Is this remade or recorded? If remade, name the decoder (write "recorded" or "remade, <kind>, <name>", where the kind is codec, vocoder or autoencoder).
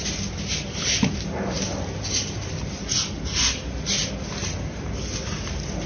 recorded